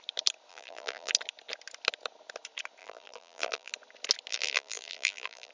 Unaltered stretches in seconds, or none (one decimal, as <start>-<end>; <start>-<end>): 0.0-0.5; 1.1-2.8; 3.7-4.3